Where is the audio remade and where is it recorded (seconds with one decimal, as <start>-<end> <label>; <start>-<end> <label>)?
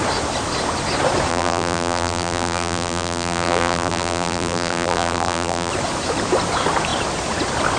0.0-1.3 recorded; 1.3-5.7 remade; 5.7-7.8 recorded